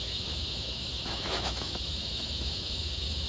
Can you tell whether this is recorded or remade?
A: remade